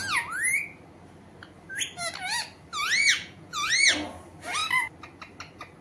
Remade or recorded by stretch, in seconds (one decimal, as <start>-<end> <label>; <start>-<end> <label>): 0.0-3.0 recorded; 3.0-3.7 remade; 3.7-5.8 recorded